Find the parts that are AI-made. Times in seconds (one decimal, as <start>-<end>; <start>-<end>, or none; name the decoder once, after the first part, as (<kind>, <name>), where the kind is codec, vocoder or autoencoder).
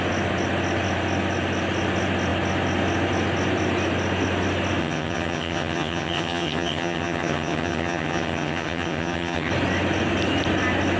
4.8-9.5 (vocoder, HiFi-GAN)